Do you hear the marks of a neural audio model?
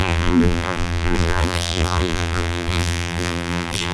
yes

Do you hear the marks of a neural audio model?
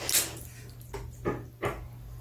no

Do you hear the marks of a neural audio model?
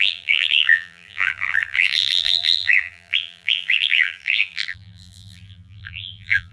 yes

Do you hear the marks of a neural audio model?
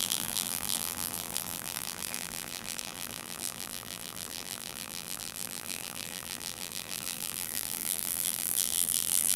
yes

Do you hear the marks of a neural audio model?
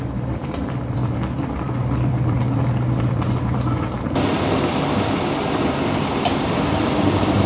yes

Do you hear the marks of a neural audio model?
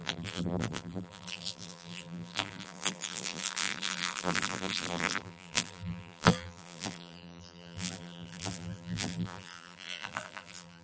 yes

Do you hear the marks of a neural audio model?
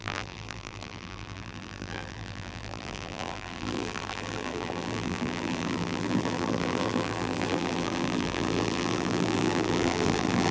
yes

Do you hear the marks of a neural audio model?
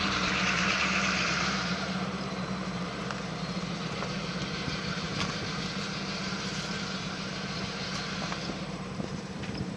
yes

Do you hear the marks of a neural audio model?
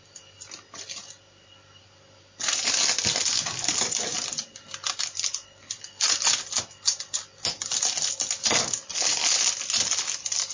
no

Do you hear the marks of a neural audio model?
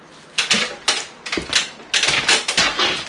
no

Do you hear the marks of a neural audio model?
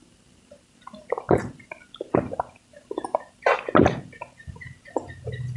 yes